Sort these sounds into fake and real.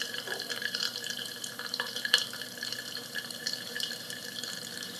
fake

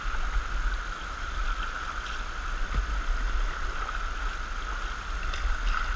real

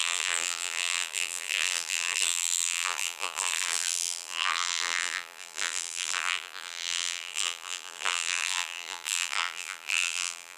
fake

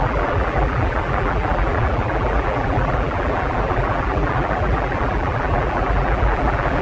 fake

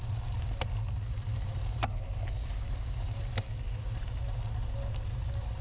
real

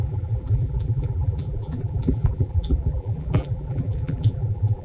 fake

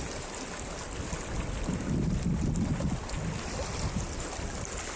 real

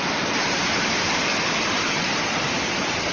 fake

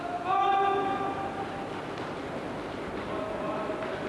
real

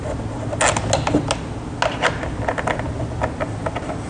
real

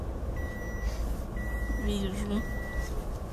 real